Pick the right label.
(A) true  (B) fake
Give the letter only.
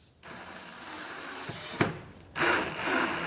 A